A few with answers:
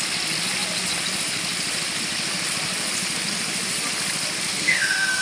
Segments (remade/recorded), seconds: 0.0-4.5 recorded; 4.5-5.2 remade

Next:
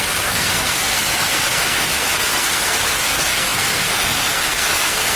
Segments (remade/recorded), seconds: 0.0-5.2 remade

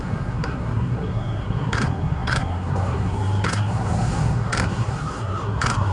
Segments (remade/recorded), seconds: 0.0-5.9 remade

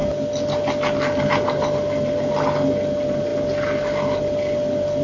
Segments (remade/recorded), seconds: 0.0-5.0 recorded

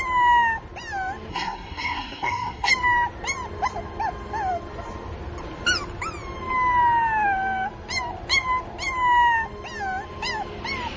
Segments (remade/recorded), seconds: 0.0-1.3 recorded; 1.3-2.7 remade; 2.7-11.0 recorded

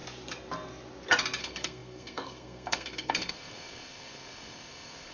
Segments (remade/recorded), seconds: 0.0-1.4 recorded; 1.4-5.1 remade

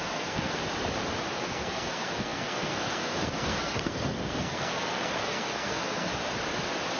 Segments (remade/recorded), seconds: 0.0-0.6 remade; 0.6-1.4 recorded; 1.4-6.1 remade; 6.1-7.0 recorded